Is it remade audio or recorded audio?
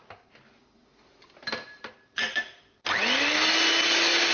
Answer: recorded